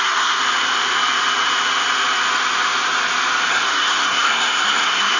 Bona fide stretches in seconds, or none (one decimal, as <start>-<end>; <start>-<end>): 0.4-3.5